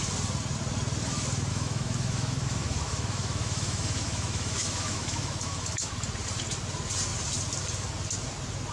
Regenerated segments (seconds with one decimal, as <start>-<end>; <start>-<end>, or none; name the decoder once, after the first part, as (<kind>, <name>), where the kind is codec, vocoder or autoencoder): 1.5-5.9 (autoencoder, DAC-VAE)